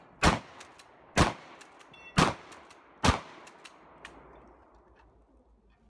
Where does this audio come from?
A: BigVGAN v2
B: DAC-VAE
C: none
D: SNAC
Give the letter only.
C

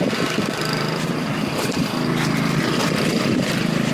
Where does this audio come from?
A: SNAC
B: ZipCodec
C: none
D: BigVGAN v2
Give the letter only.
D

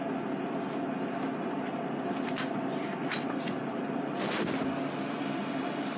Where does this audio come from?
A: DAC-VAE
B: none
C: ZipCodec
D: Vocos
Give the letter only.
B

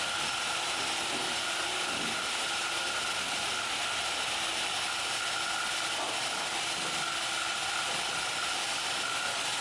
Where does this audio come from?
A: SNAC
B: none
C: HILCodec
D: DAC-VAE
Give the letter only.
B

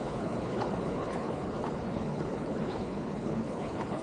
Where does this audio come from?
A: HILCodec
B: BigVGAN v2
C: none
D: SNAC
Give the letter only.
A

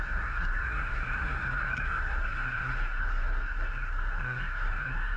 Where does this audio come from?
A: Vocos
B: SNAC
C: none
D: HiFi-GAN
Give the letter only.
B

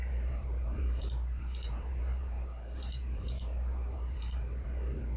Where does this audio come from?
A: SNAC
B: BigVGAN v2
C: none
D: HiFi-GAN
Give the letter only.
B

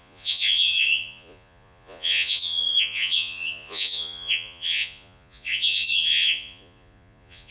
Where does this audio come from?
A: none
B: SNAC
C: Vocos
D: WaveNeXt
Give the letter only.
C